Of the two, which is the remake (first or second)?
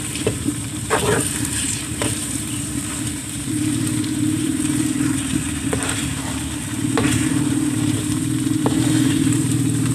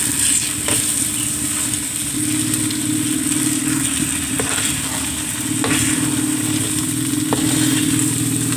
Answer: first